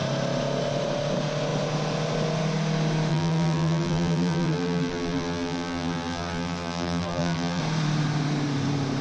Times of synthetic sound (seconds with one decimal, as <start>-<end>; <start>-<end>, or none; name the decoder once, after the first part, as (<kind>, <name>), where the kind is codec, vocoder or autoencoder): 3.1-7.6 (vocoder, BigVGAN v2)